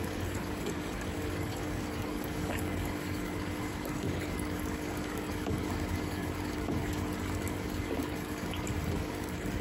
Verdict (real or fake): fake